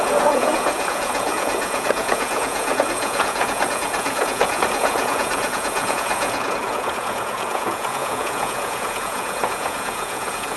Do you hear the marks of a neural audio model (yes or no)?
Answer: yes